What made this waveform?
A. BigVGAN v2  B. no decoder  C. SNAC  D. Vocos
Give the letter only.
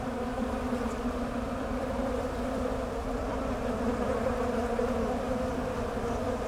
A